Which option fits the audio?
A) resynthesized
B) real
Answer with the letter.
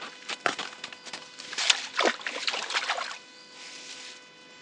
B